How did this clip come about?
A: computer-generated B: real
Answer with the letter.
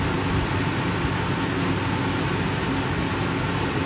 B